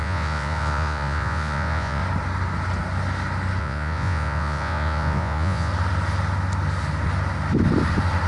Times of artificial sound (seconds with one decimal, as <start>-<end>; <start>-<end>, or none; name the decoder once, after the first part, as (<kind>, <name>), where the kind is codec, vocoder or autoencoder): 0.0-2.0 (vocoder, Vocos); 3.6-5.7